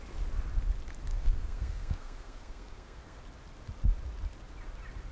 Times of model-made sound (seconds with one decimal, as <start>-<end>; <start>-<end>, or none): 1.1-3.2